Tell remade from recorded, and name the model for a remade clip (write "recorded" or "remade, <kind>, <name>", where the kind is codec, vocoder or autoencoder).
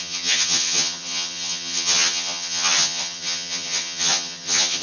remade, vocoder, HiFi-GAN